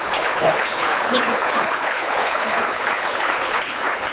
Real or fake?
fake